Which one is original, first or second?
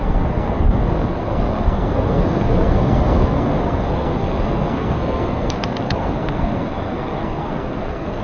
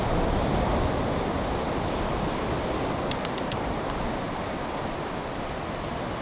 second